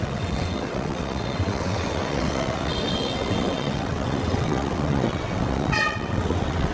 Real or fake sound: fake